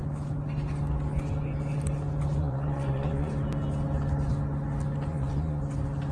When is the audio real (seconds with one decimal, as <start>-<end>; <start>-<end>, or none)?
0.0-2.4; 3.3-5.1; 5.6-6.1